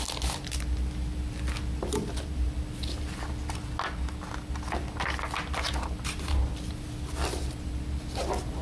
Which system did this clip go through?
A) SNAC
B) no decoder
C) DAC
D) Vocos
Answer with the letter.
B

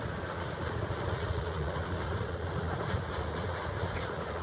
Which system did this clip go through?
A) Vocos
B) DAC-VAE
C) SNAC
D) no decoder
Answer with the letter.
A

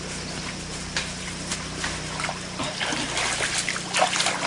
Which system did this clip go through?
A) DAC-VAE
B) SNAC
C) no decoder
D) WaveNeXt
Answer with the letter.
C